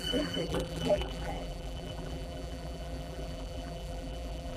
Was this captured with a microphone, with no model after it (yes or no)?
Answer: no